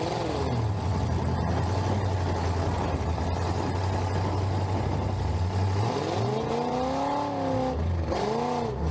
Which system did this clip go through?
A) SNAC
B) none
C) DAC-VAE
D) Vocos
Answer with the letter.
B